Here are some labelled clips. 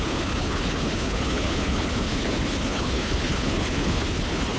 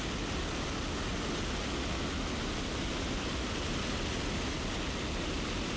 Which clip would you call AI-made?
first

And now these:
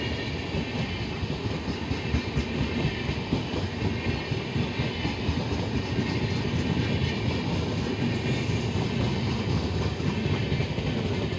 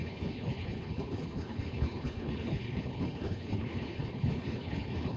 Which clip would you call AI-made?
second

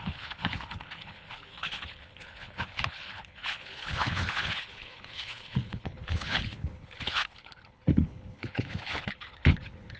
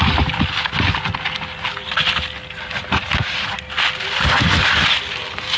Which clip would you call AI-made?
first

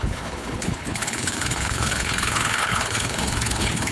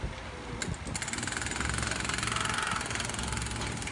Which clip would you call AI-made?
first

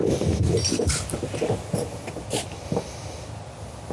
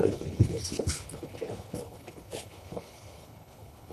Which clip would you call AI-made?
second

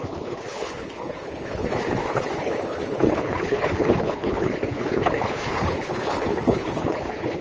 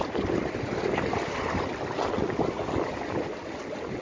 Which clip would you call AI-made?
first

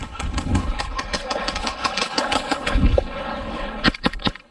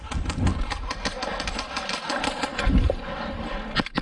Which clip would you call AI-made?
first